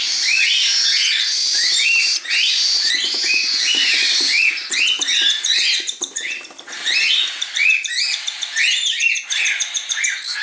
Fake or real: real